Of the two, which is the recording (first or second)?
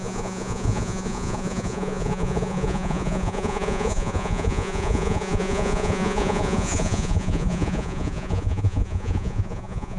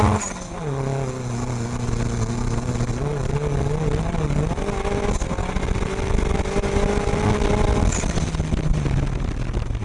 second